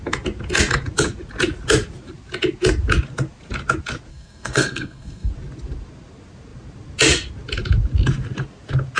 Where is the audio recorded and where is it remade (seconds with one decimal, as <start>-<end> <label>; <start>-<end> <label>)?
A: 0.0-4.1 recorded; 4.1-5.3 remade; 5.3-9.0 recorded